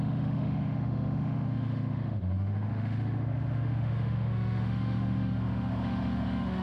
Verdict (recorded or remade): remade